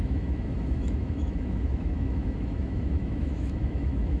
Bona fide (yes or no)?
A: no